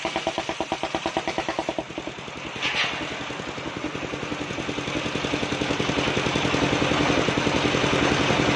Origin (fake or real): real